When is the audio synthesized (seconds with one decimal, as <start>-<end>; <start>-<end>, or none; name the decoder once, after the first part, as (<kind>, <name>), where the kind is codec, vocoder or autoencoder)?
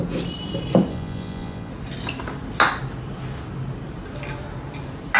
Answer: 0.9-1.7 (vocoder, Vocos)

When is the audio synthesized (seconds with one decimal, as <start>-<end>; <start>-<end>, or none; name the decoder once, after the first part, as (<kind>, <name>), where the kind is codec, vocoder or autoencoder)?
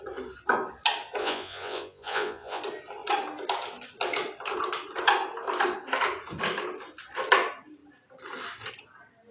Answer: 1.2-2.6 (vocoder, Vocos)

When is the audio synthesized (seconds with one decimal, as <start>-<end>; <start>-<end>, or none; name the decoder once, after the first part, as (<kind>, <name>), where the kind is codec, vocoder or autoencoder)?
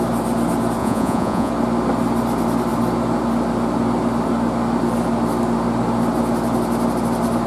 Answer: 0.8-1.5 (vocoder, Vocos)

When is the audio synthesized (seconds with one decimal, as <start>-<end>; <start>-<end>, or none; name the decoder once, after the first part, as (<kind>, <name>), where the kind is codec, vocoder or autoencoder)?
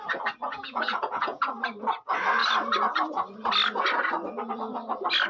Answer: 0.5-1.4 (vocoder, Vocos)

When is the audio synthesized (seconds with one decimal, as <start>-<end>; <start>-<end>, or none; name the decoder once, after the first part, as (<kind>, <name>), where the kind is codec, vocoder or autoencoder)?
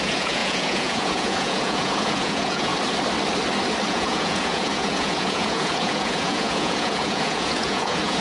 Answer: 0.0-2.7 (vocoder, Vocos); 3.9-8.2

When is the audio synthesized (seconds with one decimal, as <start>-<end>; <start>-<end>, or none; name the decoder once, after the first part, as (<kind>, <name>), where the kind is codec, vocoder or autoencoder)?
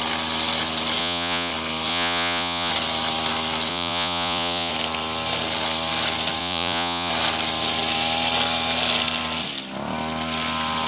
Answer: 1.0-1.5 (vocoder, Vocos); 1.9-2.7; 3.7-4.7; 6.4-7.1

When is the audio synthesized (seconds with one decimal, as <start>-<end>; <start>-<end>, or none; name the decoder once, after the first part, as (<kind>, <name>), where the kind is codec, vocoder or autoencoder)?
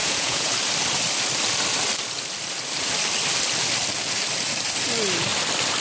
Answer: 0.0-0.5 (vocoder, Vocos)